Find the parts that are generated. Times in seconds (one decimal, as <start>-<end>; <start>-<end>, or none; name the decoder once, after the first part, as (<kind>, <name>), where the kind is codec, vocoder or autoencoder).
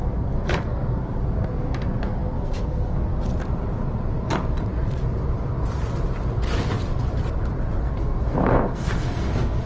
0.0-3.1 (codec, SNAC); 7.8-9.7